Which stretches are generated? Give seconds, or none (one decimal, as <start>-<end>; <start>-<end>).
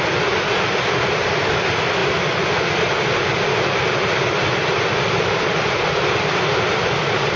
none